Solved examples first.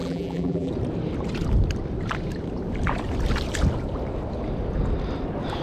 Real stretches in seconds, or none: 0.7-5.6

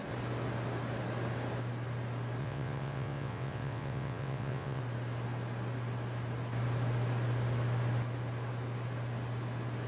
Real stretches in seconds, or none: 0.0-2.4; 4.8-9.9

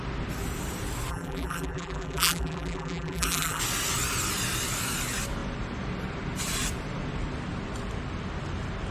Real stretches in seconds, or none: 0.0-1.1; 3.6-8.9

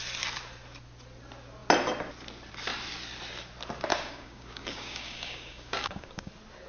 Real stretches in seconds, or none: 0.0-3.9; 6.3-6.7

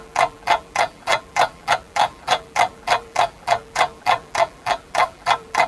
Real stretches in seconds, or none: none

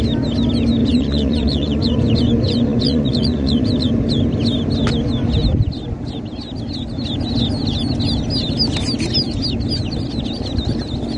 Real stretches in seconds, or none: 0.0-0.8; 3.9-11.2

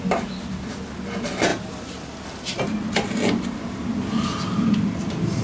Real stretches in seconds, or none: 0.0-5.4

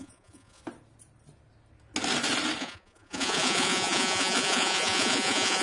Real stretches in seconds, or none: 0.6-2.6